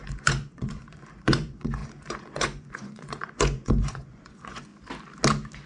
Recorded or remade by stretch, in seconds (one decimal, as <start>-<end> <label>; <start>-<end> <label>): 0.0-4.7 remade; 4.7-5.7 recorded